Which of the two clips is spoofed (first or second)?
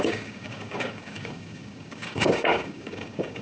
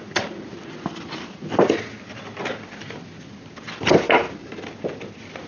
first